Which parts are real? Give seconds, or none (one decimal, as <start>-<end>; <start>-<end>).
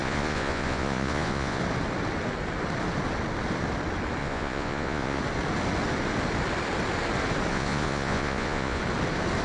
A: 1.6-4.2; 5.2-7.5; 8.8-9.4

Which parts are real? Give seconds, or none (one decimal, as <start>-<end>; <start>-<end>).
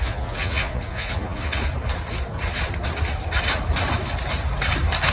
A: 1.6-5.1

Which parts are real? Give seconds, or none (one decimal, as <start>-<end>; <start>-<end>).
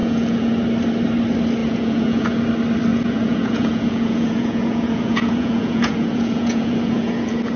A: 0.6-1.6; 2.4-2.9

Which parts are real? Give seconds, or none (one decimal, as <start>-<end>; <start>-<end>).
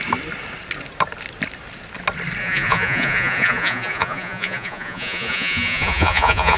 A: 0.0-2.4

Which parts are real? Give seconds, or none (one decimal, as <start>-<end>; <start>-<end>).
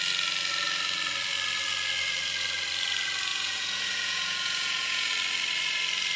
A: 0.0-3.3; 5.1-6.2